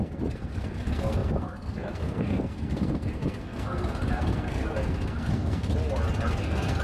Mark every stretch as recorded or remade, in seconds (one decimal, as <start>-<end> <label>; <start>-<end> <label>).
0.0-5.7 remade; 5.7-6.3 recorded; 6.3-6.8 remade

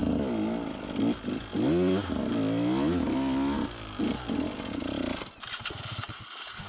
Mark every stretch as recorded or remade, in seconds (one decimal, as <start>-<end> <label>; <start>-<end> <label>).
0.0-6.7 recorded

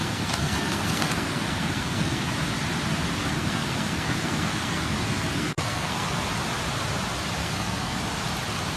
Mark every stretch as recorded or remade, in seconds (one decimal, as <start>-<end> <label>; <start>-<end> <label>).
0.0-2.3 remade; 2.3-3.2 recorded; 3.2-6.2 remade; 6.2-7.4 recorded; 7.4-8.0 remade; 8.0-8.8 recorded

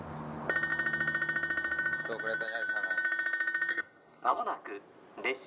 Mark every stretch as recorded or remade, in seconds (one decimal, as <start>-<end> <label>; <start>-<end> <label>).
0.0-3.7 recorded; 3.7-4.4 remade; 4.4-5.5 recorded

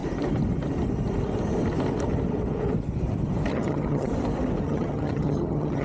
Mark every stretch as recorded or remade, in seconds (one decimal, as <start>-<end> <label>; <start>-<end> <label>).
0.0-3.5 recorded; 3.5-4.1 remade; 4.1-4.6 recorded; 4.6-5.8 remade

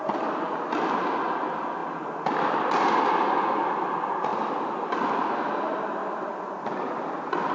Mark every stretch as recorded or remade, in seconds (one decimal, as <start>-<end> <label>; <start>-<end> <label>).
0.0-7.5 recorded